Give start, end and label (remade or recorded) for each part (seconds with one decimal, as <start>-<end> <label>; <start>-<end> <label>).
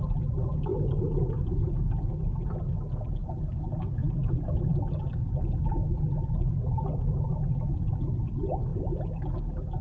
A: 0.0-3.2 recorded; 3.2-5.3 remade; 5.3-8.7 recorded; 8.7-9.3 remade; 9.3-9.8 recorded